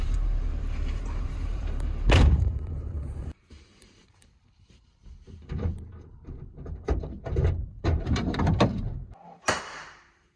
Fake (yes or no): yes